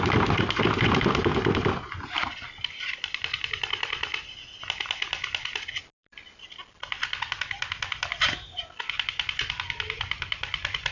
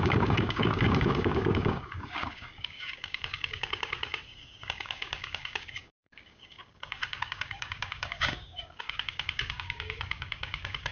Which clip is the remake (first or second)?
second